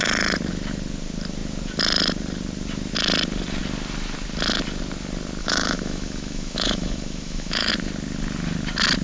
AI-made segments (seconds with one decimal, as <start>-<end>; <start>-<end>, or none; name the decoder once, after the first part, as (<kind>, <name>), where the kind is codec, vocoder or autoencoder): 5.4-7.7 (autoencoder, DAC-VAE)